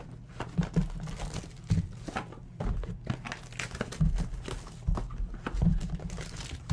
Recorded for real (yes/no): yes